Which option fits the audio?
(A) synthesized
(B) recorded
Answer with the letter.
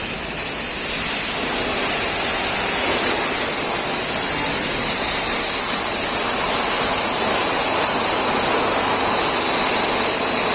B